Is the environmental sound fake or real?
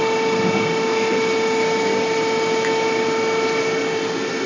real